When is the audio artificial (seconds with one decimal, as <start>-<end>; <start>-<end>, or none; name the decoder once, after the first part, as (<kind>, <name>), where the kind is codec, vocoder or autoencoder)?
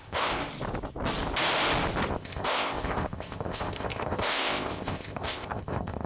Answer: 0.0-0.4 (codec, ZipCodec); 2.1-6.1